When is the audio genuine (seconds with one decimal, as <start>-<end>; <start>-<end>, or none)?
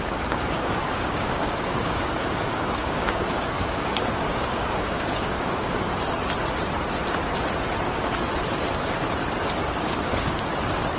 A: 5.9-9.7; 10.5-11.0